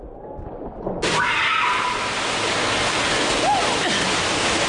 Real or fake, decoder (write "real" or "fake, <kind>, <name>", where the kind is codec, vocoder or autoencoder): real